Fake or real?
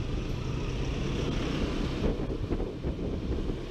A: real